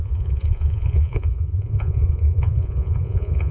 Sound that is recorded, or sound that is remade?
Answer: remade